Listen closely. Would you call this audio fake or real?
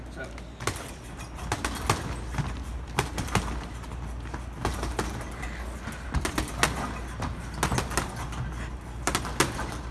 real